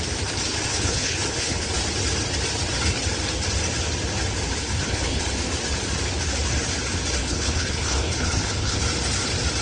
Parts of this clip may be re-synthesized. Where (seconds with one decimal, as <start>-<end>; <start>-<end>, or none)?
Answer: 0.7-1.7; 4.6-5.2; 7.2-8.8